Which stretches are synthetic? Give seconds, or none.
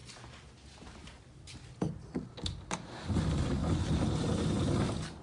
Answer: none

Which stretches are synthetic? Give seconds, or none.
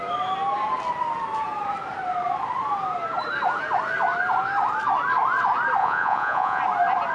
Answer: 5.8-6.6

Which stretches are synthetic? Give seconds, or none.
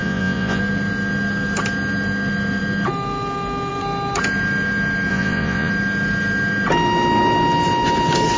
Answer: 0.0-0.6; 5.1-5.7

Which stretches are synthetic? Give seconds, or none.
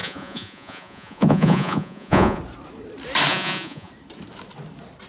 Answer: 0.0-2.4; 3.3-3.9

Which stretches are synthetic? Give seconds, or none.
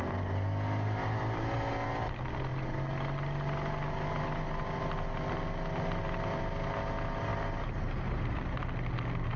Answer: none